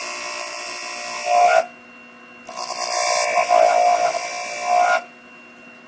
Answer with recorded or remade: recorded